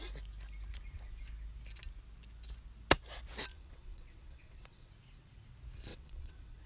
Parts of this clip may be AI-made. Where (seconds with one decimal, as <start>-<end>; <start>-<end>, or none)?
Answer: 3.5-4.9; 5.9-6.7